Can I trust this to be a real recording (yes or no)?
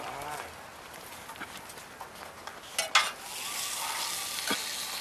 yes